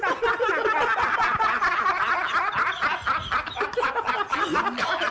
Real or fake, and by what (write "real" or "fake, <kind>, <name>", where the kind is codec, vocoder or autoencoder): real